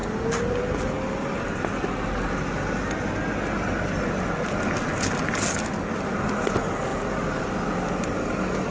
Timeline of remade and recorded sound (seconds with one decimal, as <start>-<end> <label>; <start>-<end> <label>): 0.0-8.7 recorded